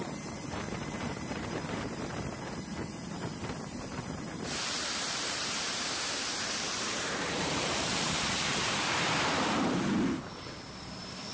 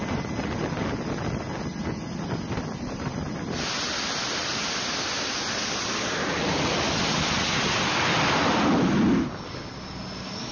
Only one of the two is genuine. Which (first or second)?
second